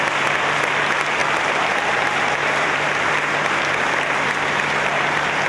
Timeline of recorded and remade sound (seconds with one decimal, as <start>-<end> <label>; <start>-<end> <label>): 0.0-1.2 recorded; 1.2-3.1 remade; 3.1-5.5 recorded